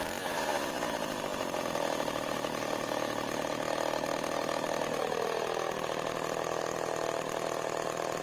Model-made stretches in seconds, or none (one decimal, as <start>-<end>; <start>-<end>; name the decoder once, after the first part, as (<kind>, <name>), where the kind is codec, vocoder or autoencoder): none